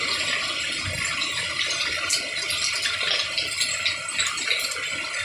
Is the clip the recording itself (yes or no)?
yes